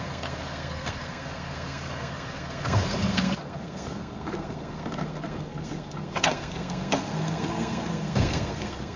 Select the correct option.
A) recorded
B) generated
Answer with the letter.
B